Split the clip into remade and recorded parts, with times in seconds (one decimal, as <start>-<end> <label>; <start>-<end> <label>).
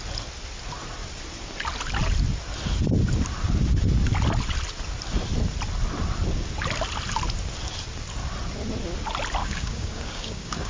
0.0-9.4 recorded; 9.4-10.7 remade